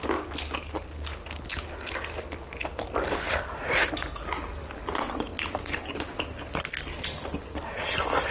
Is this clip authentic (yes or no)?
yes